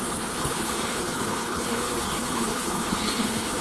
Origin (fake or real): fake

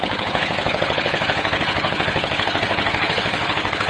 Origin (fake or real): fake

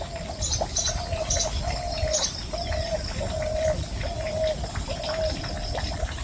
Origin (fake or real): real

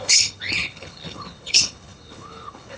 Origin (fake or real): fake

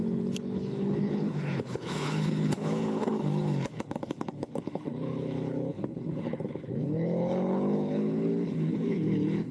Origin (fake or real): fake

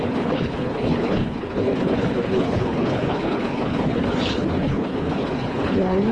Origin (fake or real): fake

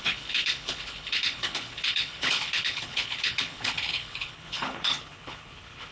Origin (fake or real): fake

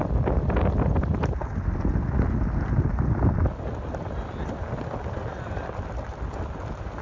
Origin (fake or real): real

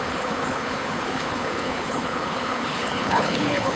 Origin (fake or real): fake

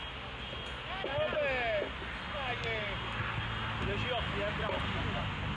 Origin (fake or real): real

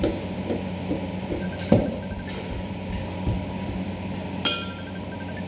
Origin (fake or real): real